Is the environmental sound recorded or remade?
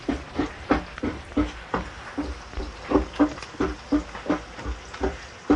recorded